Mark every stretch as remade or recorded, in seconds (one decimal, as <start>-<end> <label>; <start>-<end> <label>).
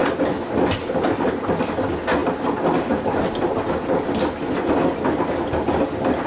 0.0-6.3 recorded